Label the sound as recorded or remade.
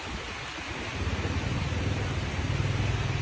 recorded